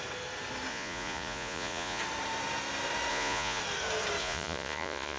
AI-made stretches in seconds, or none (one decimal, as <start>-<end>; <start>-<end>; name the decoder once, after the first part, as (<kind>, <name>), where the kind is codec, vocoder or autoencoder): 0.7-2.0 (vocoder, Vocos); 3.1-3.6; 4.2-5.2